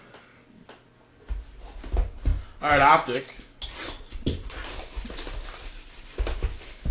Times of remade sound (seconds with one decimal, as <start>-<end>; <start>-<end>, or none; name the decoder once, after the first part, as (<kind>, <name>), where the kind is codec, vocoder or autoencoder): none